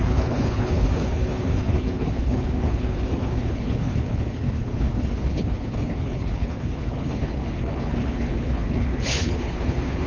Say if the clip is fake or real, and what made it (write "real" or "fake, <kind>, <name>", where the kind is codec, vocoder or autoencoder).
fake, codec, HILCodec